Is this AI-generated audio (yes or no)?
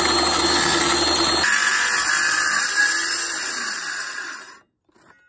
no